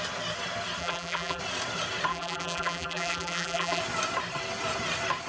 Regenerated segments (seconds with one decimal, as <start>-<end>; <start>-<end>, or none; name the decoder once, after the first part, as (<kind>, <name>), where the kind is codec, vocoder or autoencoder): 0.8-1.4 (vocoder, BigVGAN v2); 2.1-3.8